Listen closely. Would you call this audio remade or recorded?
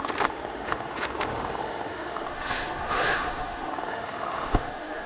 remade